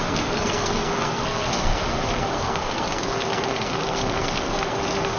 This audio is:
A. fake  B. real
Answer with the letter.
A